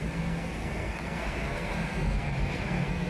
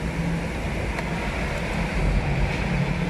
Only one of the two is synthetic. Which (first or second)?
first